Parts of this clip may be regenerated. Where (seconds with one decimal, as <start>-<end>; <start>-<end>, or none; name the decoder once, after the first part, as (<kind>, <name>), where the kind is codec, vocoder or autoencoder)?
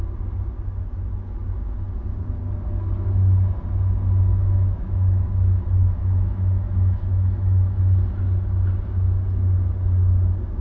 4.3-7.8 (autoencoder, DAC-VAE)